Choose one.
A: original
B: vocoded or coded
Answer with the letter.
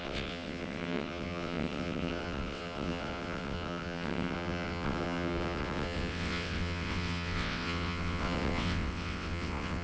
B